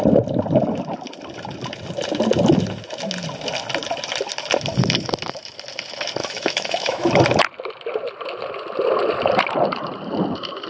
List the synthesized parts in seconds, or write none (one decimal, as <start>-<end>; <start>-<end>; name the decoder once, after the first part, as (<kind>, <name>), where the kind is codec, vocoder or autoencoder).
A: 6.2-7.1 (autoencoder, DAC-VAE)